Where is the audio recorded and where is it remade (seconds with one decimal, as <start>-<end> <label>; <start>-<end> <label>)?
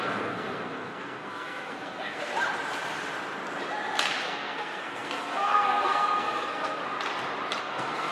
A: 0.0-2.3 remade; 2.3-4.2 recorded; 4.2-6.8 remade; 6.8-7.6 recorded; 7.6-8.1 remade